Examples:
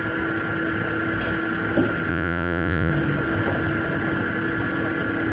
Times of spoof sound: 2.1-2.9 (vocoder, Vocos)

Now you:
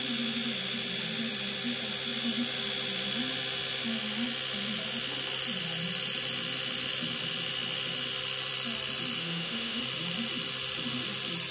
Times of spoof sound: 9.2-9.8 (autoencoder, DAC-VAE)

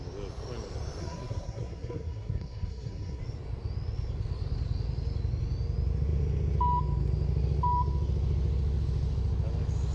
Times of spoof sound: 1.0-3.2 (codec, SNAC)

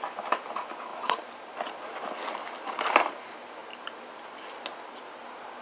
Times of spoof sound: none

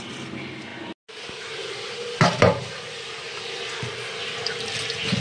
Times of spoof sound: none